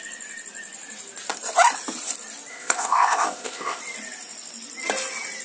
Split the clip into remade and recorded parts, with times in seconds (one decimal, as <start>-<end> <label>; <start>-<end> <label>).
0.0-2.5 recorded; 2.5-3.8 remade; 3.8-5.4 recorded